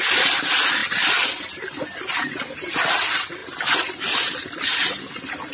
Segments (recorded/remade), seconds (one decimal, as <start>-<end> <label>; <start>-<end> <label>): 0.0-5.5 recorded